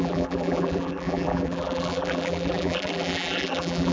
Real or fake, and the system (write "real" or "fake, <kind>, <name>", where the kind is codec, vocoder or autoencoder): fake, vocoder, BigVGAN v2